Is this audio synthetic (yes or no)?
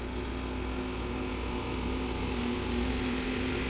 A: no